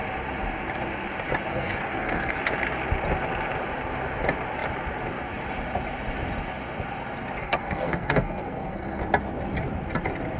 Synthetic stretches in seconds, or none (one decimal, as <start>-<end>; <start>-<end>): 1.5-2.4; 7.4-9.0